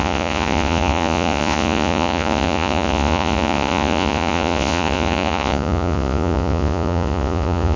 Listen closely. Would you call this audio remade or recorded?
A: remade